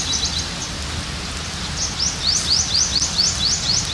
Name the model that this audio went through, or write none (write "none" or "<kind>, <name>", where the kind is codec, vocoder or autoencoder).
none